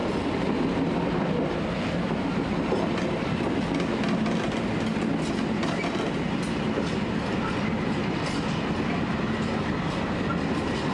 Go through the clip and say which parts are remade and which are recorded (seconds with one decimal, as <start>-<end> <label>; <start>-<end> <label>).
0.0-10.9 recorded